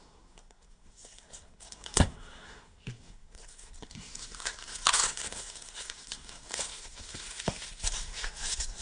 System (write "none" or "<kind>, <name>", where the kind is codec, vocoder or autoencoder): codec, SNAC